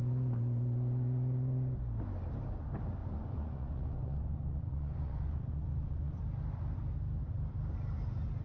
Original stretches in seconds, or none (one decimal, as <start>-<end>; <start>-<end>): 0.0-3.0; 6.2-8.4

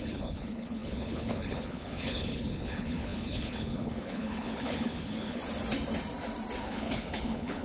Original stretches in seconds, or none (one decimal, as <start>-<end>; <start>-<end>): 5.4-6.6

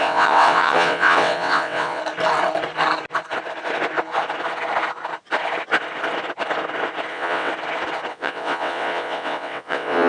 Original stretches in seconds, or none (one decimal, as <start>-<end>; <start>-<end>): 2.0-7.1; 7.5-8.1

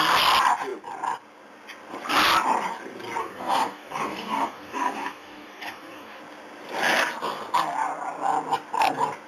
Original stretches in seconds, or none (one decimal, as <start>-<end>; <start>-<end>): 0.0-3.2; 6.2-9.3

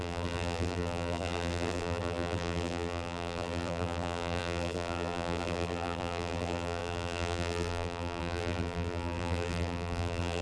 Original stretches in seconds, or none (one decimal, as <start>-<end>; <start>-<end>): none

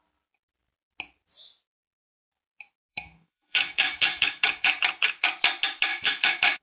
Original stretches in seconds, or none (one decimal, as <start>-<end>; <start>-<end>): 0.0-2.9; 4.7-5.9

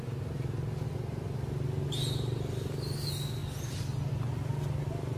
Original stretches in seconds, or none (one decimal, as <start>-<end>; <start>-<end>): 0.0-5.2

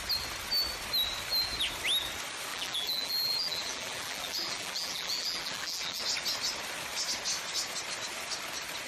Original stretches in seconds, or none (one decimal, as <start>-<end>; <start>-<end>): 0.0-2.5; 6.0-8.9